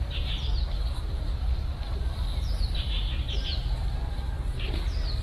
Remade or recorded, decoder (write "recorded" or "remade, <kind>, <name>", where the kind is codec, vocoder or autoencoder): recorded